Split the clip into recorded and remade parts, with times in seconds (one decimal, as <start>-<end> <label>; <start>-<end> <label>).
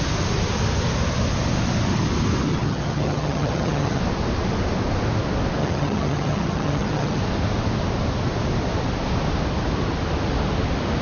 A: 0.0-2.5 recorded; 2.5-4.0 remade; 4.0-5.6 recorded; 5.6-7.2 remade; 7.2-11.0 recorded